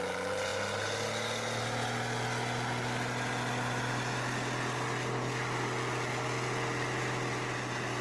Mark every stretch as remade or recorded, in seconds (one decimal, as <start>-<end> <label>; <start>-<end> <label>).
0.0-8.0 recorded